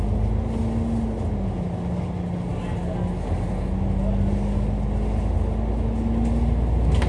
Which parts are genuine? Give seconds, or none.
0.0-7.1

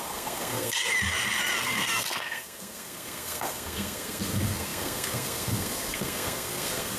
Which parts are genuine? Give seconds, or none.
0.9-1.6